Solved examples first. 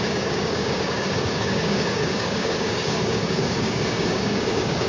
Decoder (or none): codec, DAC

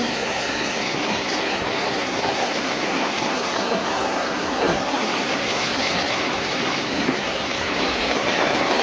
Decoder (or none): codec, SNAC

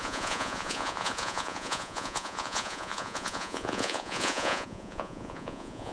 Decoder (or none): vocoder, Vocos